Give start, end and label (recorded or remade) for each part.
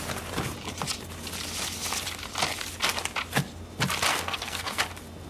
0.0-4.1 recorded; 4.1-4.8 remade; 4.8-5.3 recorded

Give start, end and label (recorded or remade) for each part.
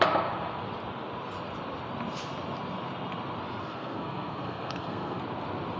0.0-3.6 recorded; 3.6-5.2 remade; 5.2-5.8 recorded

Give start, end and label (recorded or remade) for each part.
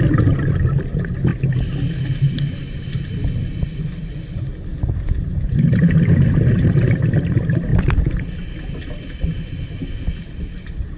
0.0-11.0 recorded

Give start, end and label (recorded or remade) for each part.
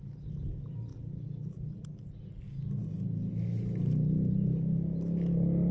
0.0-5.7 recorded